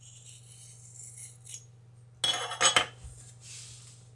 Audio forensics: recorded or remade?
recorded